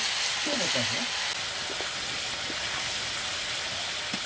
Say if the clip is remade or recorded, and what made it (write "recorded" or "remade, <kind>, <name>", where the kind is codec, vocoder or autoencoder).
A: recorded